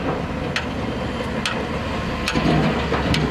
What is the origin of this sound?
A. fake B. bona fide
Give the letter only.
B